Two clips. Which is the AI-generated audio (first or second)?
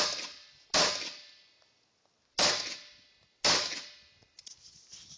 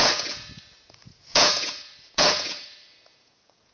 second